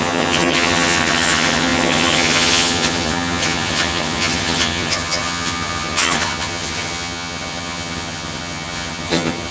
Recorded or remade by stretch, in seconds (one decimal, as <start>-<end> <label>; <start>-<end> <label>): 0.0-9.5 remade